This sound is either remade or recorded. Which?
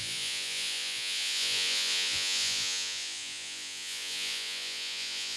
remade